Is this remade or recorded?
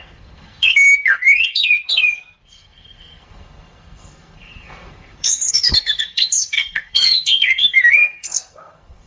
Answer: remade